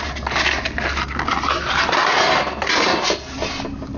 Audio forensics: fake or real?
real